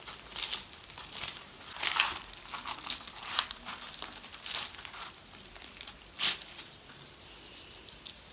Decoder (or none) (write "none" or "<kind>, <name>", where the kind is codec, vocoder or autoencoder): none